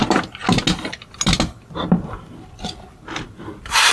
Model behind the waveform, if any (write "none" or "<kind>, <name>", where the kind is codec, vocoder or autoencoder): none